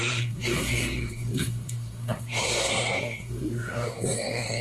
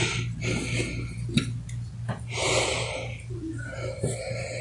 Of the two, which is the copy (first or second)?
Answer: first